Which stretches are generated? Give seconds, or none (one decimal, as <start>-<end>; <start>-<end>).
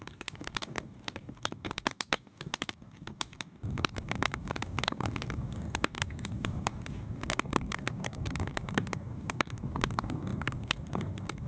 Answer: 0.0-11.5